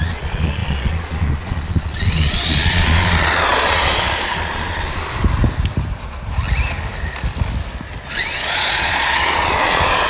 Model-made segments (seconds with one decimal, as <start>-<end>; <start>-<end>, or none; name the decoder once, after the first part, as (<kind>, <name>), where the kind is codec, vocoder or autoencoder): 0.0-5.1 (vocoder, Vocos); 8.1-10.1